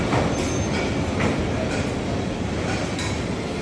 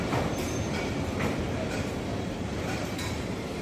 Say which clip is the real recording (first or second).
first